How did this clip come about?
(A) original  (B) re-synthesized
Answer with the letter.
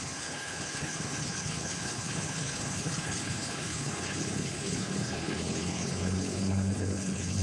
B